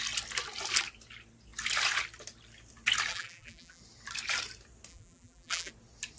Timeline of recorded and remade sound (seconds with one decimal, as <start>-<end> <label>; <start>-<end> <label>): 0.0-3.1 recorded; 3.1-3.8 remade; 3.8-4.9 recorded; 4.9-5.7 remade; 5.7-6.2 recorded